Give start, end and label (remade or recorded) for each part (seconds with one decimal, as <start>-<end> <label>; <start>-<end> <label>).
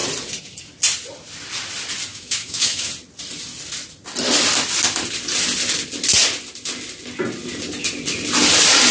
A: 0.0-2.1 recorded; 2.1-2.9 remade; 2.9-8.9 recorded